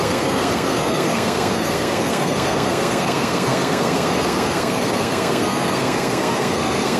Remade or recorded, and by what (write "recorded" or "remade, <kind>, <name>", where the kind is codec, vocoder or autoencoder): remade, codec, SNAC